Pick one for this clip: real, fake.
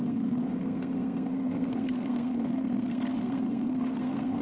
fake